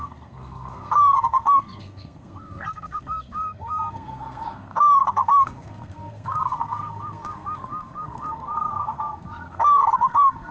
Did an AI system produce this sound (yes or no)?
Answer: yes